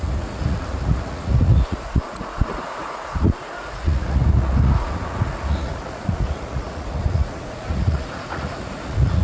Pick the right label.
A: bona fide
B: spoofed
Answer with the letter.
B